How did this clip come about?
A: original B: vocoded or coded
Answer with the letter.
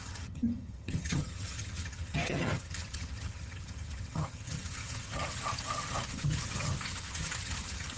B